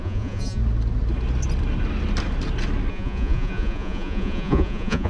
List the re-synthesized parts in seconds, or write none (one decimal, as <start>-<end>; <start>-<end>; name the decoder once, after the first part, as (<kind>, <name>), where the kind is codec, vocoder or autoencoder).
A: 0.0-0.6 (vocoder, Vocos); 2.9-5.1